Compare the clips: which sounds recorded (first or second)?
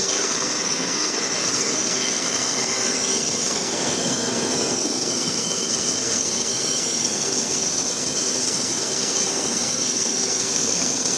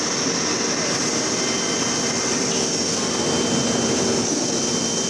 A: second